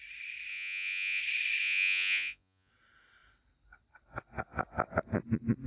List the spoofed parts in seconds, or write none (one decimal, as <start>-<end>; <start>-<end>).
0.5-1.2; 1.6-2.7